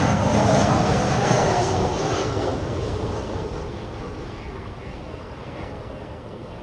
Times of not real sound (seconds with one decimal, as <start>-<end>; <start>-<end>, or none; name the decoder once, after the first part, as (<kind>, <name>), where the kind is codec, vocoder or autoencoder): 0.0-6.6 (codec, SNAC)